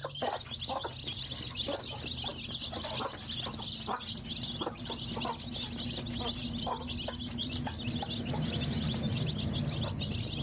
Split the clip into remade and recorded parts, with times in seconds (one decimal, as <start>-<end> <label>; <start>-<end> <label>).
0.0-10.4 recorded

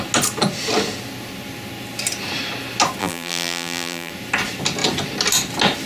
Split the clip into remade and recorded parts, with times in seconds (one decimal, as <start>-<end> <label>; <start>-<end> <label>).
0.0-3.0 recorded; 3.0-4.1 remade; 4.1-5.9 recorded

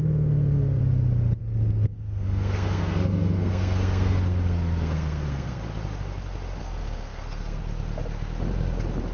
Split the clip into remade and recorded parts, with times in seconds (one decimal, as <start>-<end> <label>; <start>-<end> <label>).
0.0-0.8 remade; 0.8-1.4 recorded; 1.4-5.6 remade; 5.6-6.6 recorded; 6.6-7.6 remade; 7.6-9.1 recorded

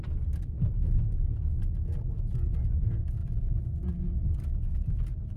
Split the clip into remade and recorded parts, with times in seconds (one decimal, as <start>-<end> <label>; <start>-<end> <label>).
0.0-3.2 recorded; 3.2-3.9 remade; 3.9-5.4 recorded